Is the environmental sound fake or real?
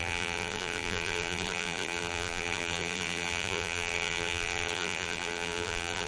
fake